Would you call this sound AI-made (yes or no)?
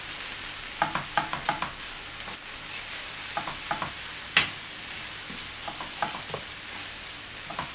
no